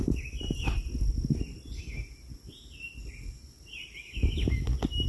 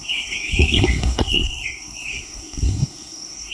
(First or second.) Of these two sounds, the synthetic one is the second